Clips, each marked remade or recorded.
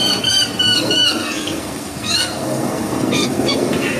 remade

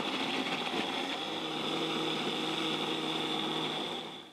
recorded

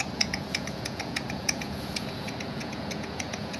remade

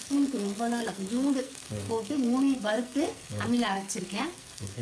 remade